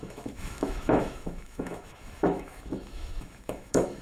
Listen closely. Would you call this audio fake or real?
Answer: fake